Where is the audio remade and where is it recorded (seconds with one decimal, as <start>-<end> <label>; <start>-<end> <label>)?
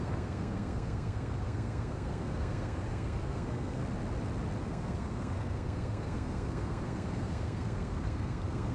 0.0-3.8 remade; 3.8-4.6 recorded; 4.6-8.7 remade